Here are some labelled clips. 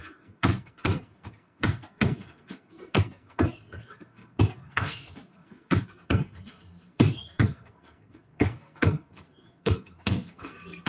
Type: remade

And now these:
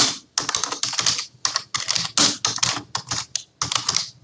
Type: recorded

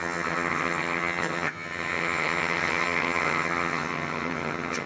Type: remade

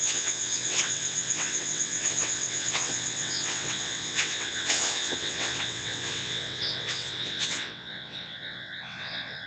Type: remade